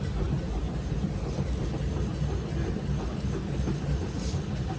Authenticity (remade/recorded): recorded